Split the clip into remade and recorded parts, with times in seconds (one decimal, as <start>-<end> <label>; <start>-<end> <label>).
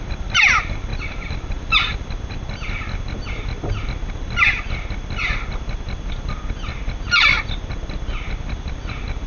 0.0-0.9 recorded; 0.9-2.2 remade; 2.2-9.3 recorded